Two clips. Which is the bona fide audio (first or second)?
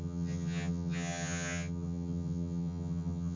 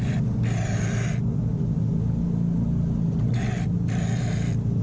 second